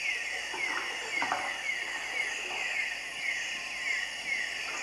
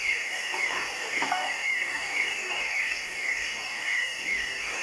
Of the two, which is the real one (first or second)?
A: first